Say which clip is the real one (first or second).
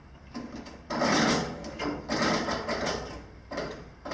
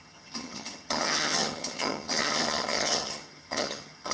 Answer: first